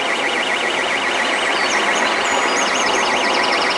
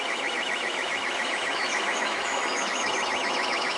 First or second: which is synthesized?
second